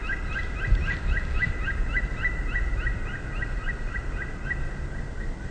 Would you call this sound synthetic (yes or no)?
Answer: no